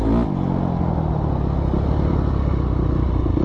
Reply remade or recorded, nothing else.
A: recorded